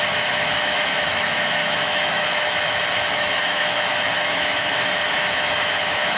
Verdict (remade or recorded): remade